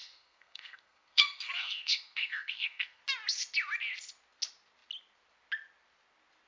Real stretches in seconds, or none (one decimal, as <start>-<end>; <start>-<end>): 3.0-6.5